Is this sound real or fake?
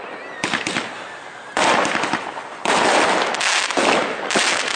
real